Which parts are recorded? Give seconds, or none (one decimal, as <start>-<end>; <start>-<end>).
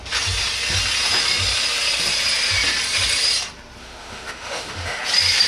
0.0-3.8; 5.0-5.5